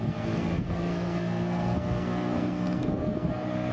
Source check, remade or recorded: remade